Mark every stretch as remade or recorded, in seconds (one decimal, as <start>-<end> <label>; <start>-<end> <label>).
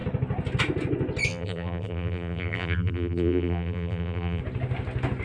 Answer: 0.0-1.3 recorded; 1.3-4.4 remade; 4.4-5.2 recorded